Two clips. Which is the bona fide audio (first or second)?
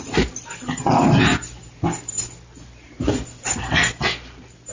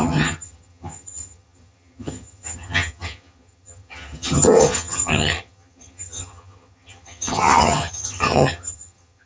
first